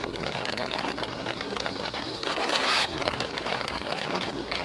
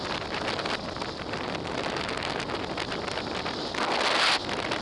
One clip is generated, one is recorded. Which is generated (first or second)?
first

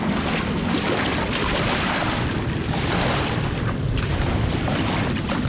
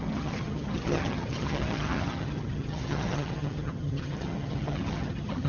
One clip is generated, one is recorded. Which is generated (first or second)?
second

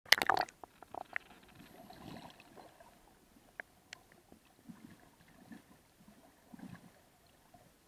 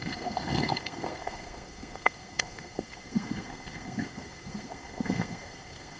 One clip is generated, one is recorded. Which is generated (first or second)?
second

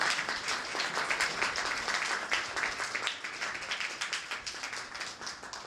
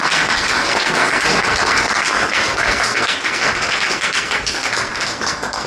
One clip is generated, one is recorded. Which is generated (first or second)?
second